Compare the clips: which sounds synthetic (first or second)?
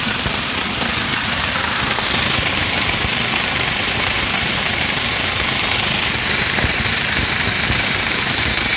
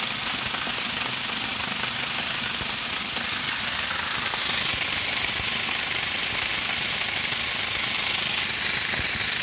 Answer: first